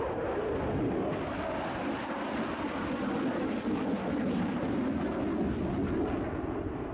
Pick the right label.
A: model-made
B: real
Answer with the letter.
B